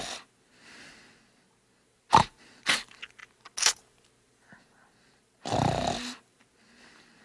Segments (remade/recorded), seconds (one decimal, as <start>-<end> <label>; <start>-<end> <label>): 0.0-7.2 recorded